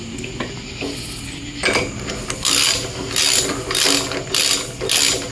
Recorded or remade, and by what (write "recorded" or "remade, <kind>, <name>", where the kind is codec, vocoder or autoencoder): recorded